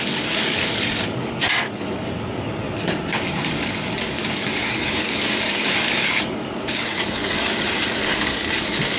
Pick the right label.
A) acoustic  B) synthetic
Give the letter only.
B